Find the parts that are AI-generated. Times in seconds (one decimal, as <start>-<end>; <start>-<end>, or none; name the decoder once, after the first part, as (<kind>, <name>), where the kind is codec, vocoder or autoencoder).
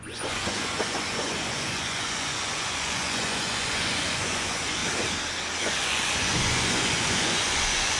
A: 0.0-4.8 (vocoder, Vocos); 5.6-8.0